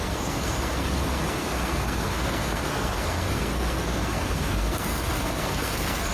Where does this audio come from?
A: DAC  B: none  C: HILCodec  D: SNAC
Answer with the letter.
D